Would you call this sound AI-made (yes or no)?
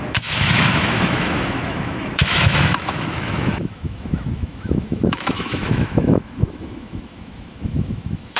yes